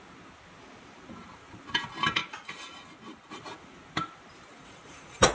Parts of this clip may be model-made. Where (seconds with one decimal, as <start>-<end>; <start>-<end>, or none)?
4.5-5.3